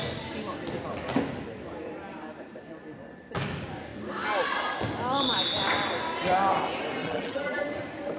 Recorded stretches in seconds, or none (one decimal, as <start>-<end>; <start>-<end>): 0.0-7.0; 7.6-8.2